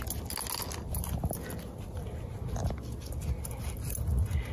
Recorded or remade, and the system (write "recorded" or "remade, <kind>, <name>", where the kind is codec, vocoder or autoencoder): recorded